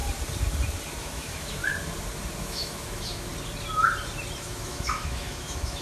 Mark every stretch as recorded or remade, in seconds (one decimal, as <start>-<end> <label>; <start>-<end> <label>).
0.0-1.0 recorded; 1.0-1.6 remade; 1.6-2.4 recorded; 2.4-3.3 remade; 3.3-4.4 recorded; 4.4-5.8 remade